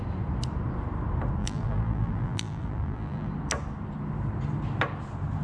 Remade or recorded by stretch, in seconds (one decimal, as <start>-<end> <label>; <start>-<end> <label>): 0.0-1.4 recorded; 1.4-3.3 remade; 3.3-5.4 recorded